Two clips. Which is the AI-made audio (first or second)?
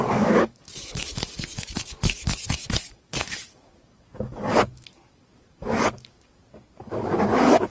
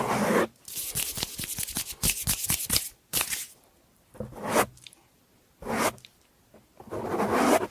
first